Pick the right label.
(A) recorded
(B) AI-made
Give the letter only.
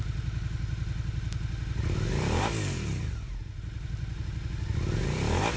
A